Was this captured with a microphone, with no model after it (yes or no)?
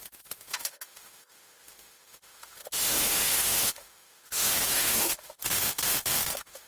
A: no